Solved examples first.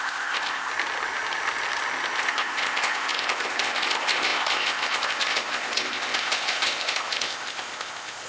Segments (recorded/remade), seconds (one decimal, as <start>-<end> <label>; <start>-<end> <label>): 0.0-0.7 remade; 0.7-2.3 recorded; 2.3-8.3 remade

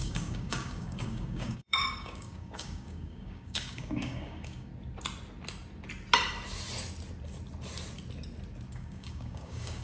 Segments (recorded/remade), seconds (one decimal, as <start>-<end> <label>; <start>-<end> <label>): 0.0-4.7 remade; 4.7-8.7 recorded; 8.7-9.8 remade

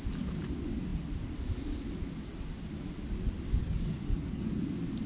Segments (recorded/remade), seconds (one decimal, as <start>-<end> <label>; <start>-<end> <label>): 0.0-3.6 recorded; 3.6-4.6 remade; 4.6-5.1 recorded

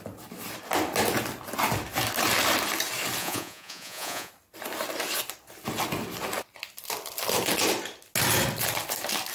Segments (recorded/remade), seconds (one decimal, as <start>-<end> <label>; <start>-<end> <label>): 0.0-3.2 recorded; 3.2-4.3 remade; 4.3-9.3 recorded

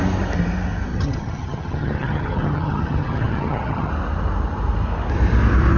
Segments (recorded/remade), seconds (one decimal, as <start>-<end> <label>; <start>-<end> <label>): 0.0-0.9 recorded; 0.9-3.9 remade; 3.9-5.8 recorded